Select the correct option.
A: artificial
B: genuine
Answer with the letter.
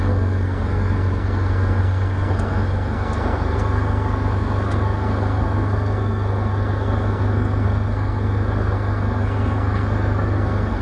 A